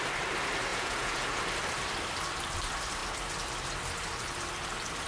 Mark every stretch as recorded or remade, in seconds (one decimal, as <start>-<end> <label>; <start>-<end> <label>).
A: 0.0-0.7 recorded; 0.7-1.4 remade; 1.4-5.1 recorded